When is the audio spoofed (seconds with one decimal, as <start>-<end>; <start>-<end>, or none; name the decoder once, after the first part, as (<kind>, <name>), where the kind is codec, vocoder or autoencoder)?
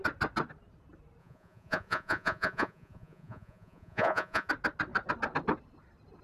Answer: 1.2-4.5 (vocoder, Vocos)